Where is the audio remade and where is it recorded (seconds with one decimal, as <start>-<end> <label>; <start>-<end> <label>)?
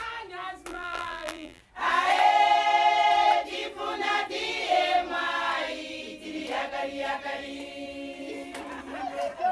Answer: 0.0-0.7 recorded; 0.7-1.6 remade; 1.6-9.5 recorded